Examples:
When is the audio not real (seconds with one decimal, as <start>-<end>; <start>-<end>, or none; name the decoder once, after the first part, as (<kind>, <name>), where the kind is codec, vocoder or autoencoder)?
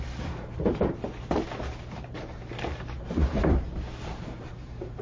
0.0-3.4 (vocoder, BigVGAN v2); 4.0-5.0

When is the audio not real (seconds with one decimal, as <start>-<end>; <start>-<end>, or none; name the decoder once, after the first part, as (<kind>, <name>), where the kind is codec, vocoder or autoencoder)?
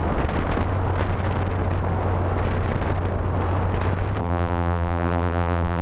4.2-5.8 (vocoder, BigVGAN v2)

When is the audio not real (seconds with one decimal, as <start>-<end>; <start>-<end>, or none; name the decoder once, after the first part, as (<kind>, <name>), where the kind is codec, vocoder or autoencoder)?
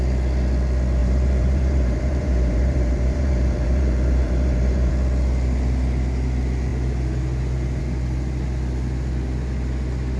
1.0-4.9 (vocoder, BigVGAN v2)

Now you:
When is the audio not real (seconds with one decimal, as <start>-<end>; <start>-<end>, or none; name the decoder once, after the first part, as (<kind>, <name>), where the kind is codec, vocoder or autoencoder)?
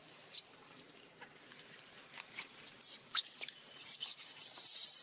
0.0-5.0 (vocoder, BigVGAN v2)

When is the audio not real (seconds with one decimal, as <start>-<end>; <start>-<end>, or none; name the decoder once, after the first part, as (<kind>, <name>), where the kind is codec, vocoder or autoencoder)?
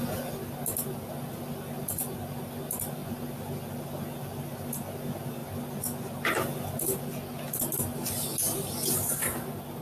none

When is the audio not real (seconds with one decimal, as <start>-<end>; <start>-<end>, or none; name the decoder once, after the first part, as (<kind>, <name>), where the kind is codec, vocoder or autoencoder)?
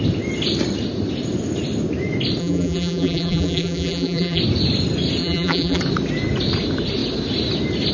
2.4-4.4 (vocoder, BigVGAN v2); 5.2-5.8